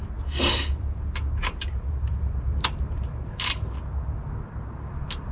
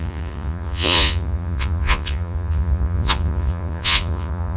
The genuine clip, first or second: first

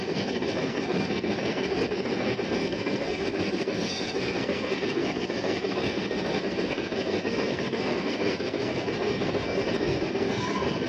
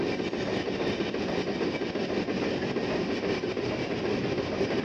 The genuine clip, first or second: second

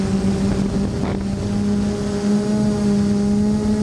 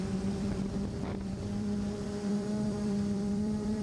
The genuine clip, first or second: first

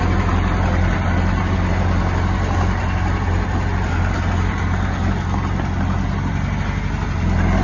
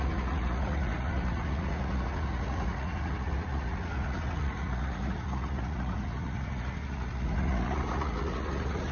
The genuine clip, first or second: first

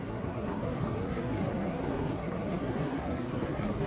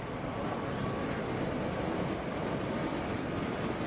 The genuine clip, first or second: second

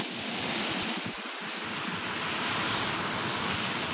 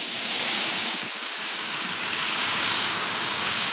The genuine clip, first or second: first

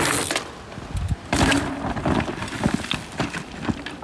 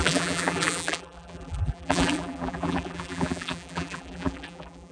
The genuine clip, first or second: first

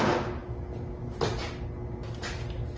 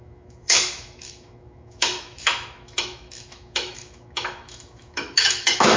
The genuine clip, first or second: first